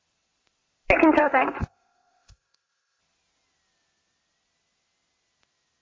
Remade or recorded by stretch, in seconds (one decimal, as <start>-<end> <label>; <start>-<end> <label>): 0.0-1.2 recorded; 1.2-3.0 remade; 3.0-5.8 recorded